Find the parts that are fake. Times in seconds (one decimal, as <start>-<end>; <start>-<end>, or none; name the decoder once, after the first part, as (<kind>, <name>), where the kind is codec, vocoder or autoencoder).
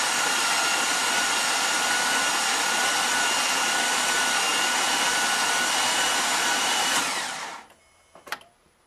none